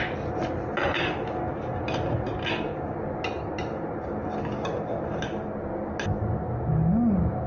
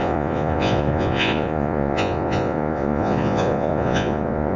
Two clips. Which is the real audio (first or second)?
first